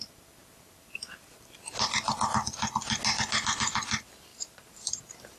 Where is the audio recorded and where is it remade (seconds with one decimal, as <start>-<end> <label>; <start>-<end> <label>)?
0.0-4.3 recorded; 4.3-5.0 remade; 5.0-5.4 recorded